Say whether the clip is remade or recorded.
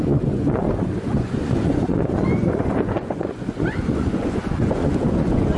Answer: remade